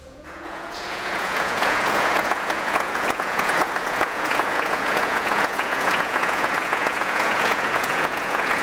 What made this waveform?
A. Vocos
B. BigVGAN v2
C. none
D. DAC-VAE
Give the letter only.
A